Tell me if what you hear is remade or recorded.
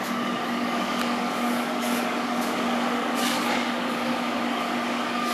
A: remade